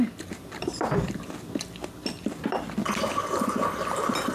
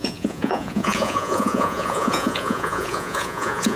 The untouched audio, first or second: first